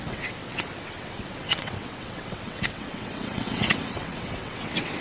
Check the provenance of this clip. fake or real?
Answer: fake